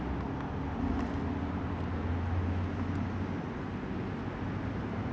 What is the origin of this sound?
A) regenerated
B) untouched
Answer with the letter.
B